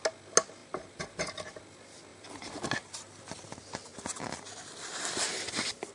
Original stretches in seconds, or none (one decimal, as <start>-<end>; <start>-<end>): 0.0-0.6; 1.3-2.1; 2.7-3.9